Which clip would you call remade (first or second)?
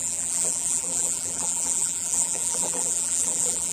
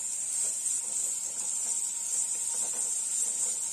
first